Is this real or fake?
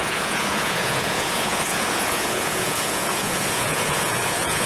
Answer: fake